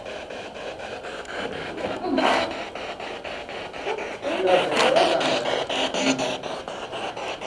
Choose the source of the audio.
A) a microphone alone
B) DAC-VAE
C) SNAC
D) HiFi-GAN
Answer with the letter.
A